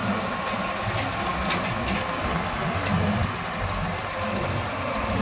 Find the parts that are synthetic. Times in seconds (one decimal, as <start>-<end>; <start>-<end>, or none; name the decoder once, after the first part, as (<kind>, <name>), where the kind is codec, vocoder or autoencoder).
none